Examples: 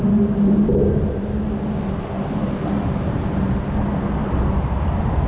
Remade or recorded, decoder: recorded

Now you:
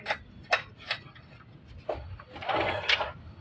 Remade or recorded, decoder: recorded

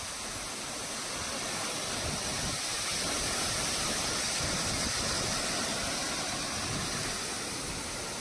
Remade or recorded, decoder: recorded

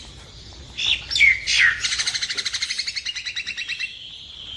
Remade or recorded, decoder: recorded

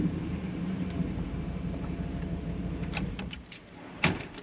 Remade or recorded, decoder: remade, vocoder, BigVGAN v2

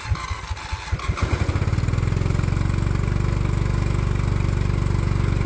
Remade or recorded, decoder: recorded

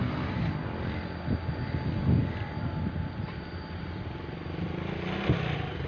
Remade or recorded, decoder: recorded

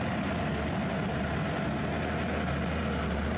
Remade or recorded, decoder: recorded